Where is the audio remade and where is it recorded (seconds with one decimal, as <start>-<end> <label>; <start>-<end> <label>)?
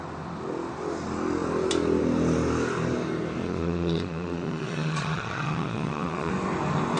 0.0-3.4 recorded; 3.4-6.3 remade; 6.3-7.0 recorded